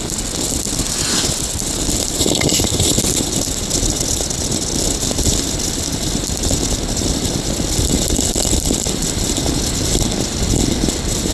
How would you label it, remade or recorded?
recorded